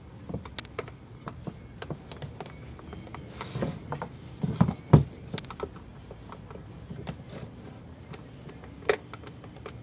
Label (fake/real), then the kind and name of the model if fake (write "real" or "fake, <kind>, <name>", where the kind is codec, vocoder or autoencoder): real